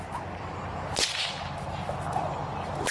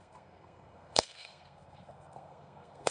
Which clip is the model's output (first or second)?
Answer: second